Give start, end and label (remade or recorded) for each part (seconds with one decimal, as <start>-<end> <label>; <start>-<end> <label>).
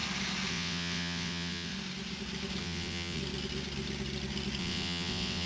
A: 0.0-0.5 recorded; 0.5-1.7 remade; 1.7-2.6 recorded; 2.6-3.2 remade; 3.2-4.6 recorded; 4.6-5.5 remade